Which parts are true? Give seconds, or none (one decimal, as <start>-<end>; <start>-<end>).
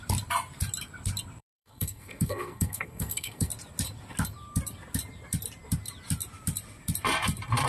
0.0-1.4; 3.5-7.7